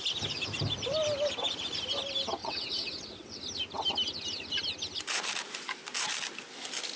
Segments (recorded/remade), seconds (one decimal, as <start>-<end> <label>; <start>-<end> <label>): 0.0-2.4 recorded; 2.4-3.4 remade; 3.4-7.0 recorded